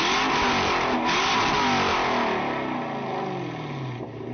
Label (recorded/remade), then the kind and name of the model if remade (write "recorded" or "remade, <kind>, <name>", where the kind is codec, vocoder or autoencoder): recorded